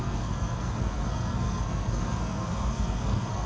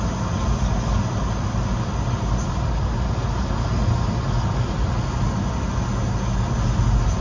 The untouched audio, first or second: second